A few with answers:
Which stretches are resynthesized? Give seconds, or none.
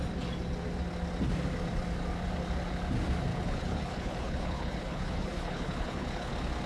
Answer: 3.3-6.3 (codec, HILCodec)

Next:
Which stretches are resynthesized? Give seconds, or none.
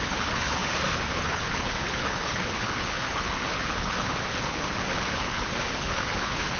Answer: 0.0-6.6 (codec, HILCodec)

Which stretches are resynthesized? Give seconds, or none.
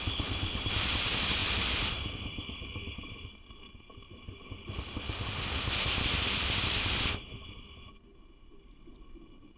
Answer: none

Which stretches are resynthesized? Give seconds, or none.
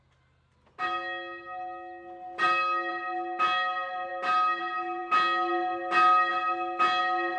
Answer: none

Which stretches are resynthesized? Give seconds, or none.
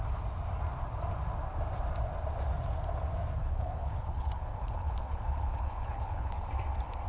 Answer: 3.4-6.5 (codec, HILCodec)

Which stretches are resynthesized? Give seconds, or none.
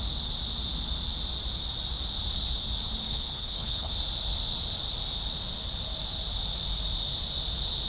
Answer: 3.1-3.9 (codec, HILCodec)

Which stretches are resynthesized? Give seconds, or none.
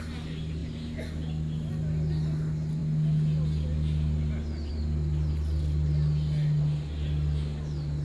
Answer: none